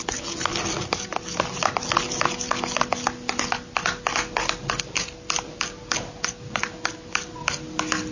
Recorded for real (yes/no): yes